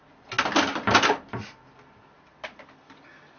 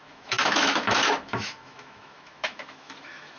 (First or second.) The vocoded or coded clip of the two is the second